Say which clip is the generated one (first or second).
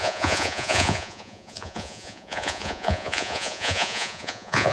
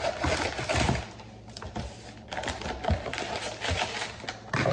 first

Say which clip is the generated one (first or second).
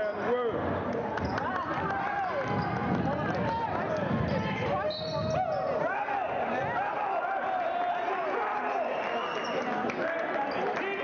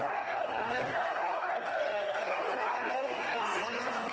second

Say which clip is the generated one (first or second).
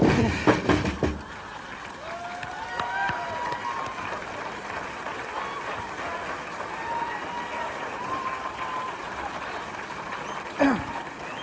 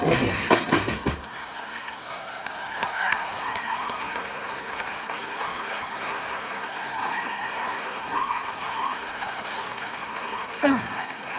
second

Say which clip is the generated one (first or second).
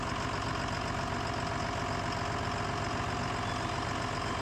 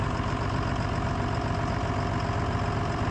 second